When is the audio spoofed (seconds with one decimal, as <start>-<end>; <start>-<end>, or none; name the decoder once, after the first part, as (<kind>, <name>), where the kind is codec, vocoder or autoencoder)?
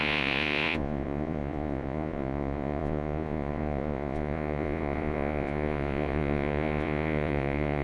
0.0-7.8 (vocoder, Vocos)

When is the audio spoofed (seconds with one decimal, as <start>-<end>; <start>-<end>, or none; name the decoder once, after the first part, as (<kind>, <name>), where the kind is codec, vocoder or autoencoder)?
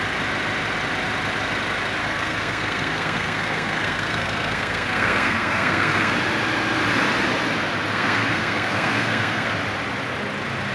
2.0-6.1 (codec, SNAC); 7.9-9.5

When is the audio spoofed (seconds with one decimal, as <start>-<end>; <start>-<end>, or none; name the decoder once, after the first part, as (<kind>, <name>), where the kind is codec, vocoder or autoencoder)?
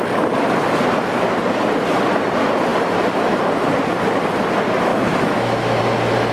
4.9-5.8 (autoencoder, DAC-VAE)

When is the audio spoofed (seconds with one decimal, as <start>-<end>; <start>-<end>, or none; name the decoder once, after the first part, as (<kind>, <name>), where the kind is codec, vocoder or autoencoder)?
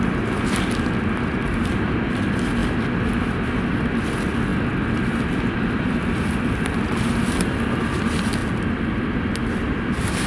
none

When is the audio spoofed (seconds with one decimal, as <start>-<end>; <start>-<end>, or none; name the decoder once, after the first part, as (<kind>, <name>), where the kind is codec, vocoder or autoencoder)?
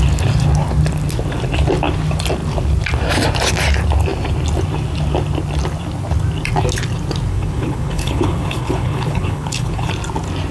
7.3-9.9 (codec, HILCodec)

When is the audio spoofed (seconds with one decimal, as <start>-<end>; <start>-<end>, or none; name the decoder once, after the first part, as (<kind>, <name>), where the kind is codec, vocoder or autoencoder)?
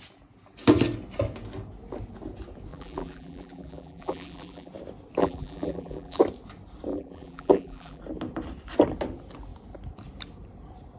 2.7-4.7 (vocoder, BigVGAN v2); 5.2-6.2; 6.9-8.0